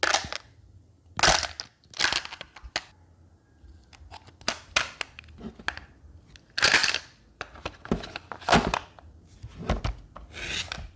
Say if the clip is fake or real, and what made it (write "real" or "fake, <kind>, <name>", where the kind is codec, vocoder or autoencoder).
real